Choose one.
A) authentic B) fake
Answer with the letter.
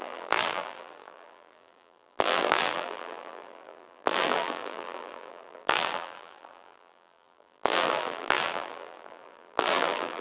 B